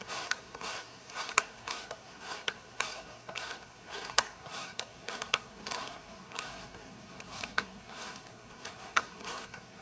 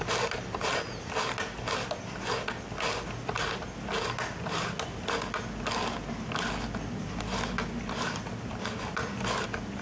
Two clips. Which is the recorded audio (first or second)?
second